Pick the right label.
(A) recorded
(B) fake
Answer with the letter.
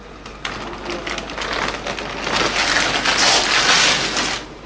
A